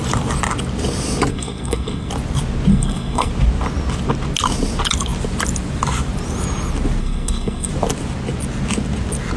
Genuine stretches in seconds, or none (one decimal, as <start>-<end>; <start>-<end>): 0.0-1.3; 2.1-2.7; 3.3-7.0; 7.7-9.4